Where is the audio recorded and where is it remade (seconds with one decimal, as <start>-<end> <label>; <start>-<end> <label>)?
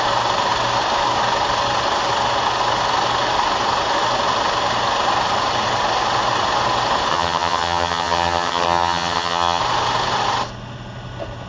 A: 0.0-7.1 recorded; 7.1-9.6 remade; 9.6-11.5 recorded